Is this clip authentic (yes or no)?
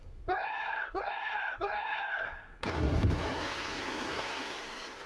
no